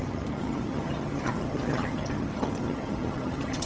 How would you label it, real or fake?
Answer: fake